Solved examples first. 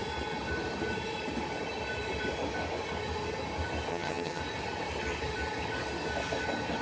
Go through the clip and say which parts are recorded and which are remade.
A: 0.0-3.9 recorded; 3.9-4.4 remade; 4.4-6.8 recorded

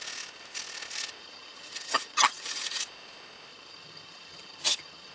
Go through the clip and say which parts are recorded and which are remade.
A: 0.0-1.2 recorded; 1.2-2.8 remade; 2.8-3.5 recorded; 3.5-5.1 remade

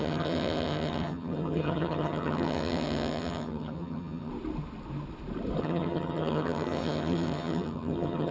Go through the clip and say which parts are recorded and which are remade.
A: 0.0-4.3 remade; 4.3-5.6 recorded; 5.6-8.3 remade

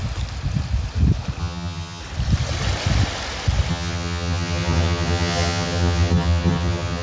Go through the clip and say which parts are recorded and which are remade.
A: 0.0-1.4 recorded; 1.4-2.0 remade; 2.0-3.7 recorded; 3.7-7.0 remade

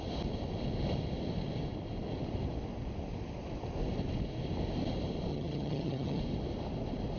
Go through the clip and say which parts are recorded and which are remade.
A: 0.0-5.3 recorded; 5.3-6.2 remade; 6.2-7.2 recorded

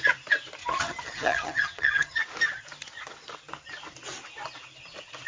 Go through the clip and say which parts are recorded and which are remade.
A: 0.0-0.6 recorded; 0.6-2.2 remade; 2.2-5.3 recorded

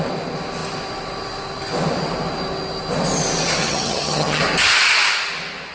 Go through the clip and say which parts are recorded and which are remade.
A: 0.0-3.6 recorded; 3.6-4.4 remade; 4.4-5.7 recorded

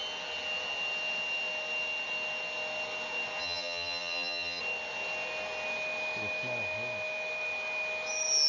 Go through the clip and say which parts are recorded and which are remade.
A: 0.0-3.4 recorded; 3.4-4.6 remade; 4.6-8.5 recorded